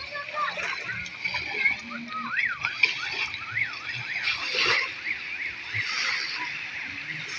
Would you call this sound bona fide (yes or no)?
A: yes